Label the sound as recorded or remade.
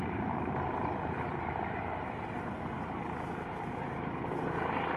recorded